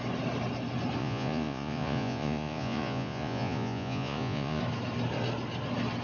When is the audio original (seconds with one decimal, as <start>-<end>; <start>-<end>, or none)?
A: 0.0-1.0; 4.6-6.0